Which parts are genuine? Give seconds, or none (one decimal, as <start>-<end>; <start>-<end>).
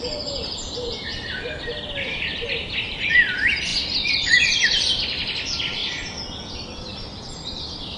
3.7-4.8; 5.8-6.9